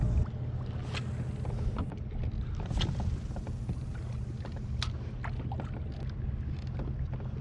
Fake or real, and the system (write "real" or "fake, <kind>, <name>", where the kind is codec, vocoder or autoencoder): real